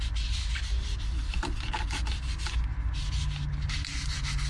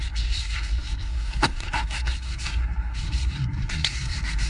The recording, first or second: first